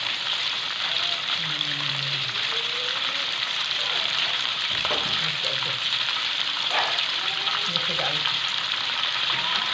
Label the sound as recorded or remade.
remade